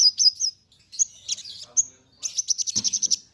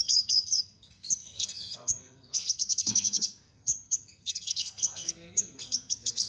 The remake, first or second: second